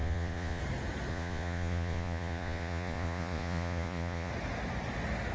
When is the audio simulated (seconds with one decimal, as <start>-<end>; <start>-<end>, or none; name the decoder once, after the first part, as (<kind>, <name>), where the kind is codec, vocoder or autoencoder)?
0.0-0.6 (vocoder, Vocos); 1.1-4.3